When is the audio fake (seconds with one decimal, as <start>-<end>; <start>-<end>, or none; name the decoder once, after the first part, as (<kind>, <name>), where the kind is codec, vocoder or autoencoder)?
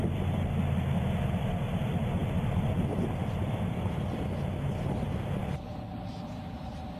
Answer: none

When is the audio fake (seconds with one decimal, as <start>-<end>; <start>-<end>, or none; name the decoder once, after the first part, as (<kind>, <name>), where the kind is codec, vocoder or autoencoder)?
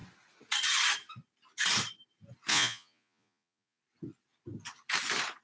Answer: 2.5-3.8 (vocoder, Vocos)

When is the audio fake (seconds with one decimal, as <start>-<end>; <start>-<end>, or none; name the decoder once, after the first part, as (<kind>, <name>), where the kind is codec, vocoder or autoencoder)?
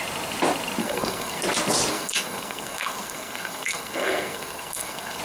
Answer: 0.8-1.4 (codec, SNAC); 1.9-5.2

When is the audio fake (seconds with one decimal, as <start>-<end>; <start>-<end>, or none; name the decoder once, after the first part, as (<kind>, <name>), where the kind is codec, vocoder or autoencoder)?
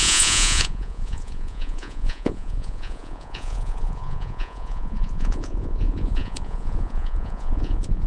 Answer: 0.0-8.1 (vocoder, Vocos)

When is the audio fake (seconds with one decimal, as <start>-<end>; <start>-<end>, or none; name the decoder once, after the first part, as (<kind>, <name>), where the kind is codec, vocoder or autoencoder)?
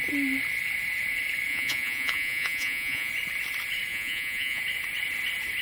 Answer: 1.5-3.1 (vocoder, Vocos); 3.9-4.6